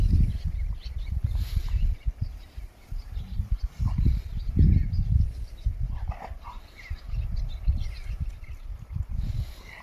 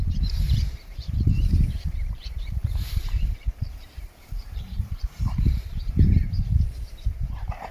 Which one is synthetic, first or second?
second